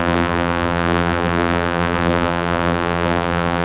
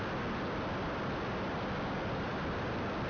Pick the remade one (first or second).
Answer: first